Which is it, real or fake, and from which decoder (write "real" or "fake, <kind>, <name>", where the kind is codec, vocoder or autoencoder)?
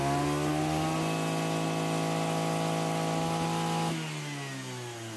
real